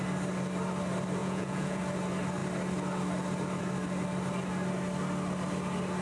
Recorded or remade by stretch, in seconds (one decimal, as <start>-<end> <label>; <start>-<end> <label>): 0.0-1.2 recorded; 1.2-1.8 remade; 1.8-6.0 recorded